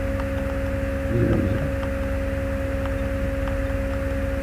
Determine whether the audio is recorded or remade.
recorded